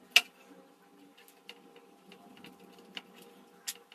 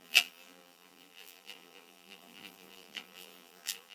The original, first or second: first